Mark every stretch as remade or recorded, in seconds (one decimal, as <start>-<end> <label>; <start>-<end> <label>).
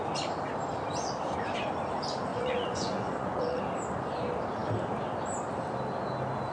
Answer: 0.0-2.3 recorded; 2.3-3.6 remade; 3.6-6.5 recorded